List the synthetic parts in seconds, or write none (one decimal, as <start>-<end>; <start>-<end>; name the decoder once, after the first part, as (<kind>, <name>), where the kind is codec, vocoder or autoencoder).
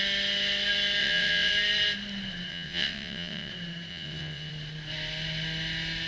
1.0-1.5 (vocoder, WaveNeXt); 2.5-3.5; 3.9-4.5